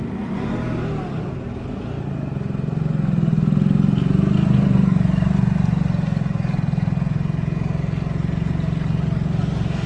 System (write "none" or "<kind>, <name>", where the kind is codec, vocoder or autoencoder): none